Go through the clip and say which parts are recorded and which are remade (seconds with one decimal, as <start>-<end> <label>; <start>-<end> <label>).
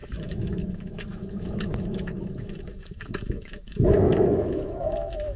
0.0-5.4 remade